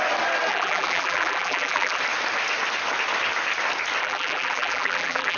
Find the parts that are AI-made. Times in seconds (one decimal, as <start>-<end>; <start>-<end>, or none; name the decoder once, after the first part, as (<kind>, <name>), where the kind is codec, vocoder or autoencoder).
0.5-2.0 (vocoder, BigVGAN v2); 4.0-5.4